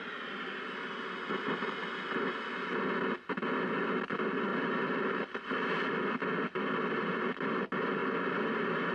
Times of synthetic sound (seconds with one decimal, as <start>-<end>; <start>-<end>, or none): 4.5-5.9